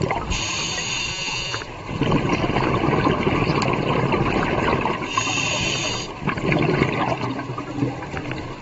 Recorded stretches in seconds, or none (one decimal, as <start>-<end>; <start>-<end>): 0.0-1.1; 1.6-8.6